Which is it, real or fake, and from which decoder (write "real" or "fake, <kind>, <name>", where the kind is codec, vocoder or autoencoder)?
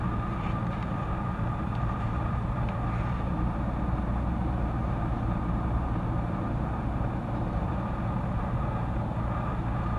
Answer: fake, vocoder, BigVGAN v2